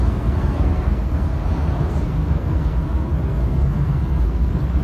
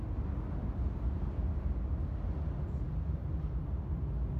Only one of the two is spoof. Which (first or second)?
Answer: first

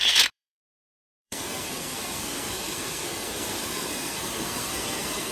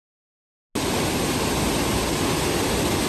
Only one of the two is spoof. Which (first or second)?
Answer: first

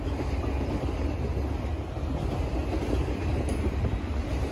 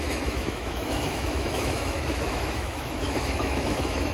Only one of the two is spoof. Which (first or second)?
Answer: second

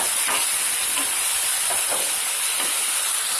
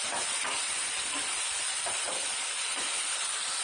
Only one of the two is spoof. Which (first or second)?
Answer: second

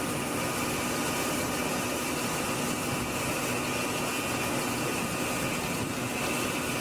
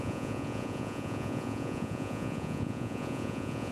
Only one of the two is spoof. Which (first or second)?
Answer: second